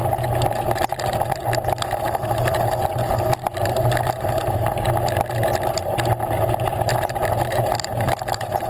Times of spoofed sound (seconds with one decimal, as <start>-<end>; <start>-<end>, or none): 6.9-8.7